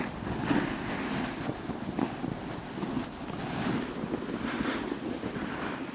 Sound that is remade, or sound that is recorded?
recorded